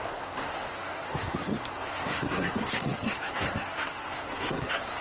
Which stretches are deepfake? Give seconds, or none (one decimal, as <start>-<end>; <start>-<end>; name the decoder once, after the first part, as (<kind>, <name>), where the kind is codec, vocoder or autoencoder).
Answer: 0.0-5.0 (codec, SNAC)